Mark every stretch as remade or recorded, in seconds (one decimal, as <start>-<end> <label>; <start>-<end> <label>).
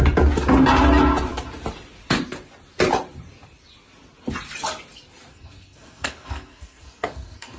0.0-5.3 recorded; 5.3-7.6 remade